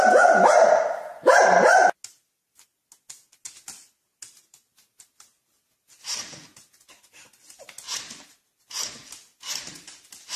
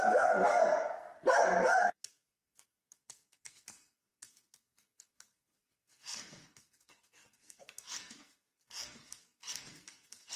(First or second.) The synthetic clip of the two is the second